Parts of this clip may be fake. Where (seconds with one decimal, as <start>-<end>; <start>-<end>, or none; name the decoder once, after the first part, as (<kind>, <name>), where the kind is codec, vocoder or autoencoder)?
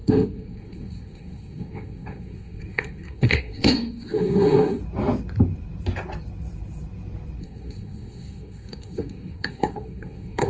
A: 0.0-4.8 (codec, SNAC); 7.4-10.5